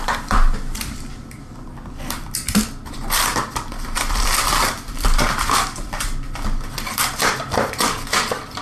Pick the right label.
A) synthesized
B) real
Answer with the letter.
A